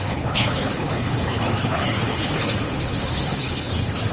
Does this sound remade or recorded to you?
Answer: remade